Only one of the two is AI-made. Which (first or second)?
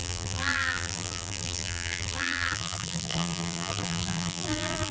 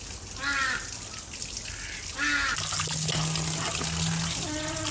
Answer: first